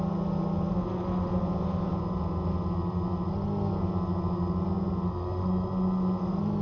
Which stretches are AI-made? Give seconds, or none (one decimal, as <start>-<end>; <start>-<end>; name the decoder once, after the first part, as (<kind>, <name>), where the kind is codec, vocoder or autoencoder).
none